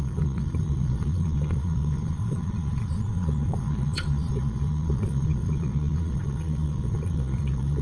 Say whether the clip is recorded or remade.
remade